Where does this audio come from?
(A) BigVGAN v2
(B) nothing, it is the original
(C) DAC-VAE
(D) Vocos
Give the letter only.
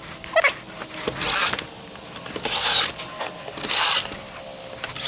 B